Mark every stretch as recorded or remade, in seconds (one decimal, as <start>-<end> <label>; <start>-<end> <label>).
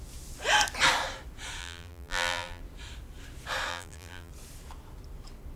0.0-1.6 recorded; 1.6-2.6 remade; 2.6-3.7 recorded; 3.7-4.3 remade; 4.3-5.6 recorded